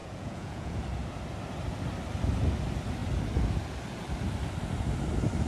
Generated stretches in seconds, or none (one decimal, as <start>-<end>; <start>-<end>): 0.0-0.8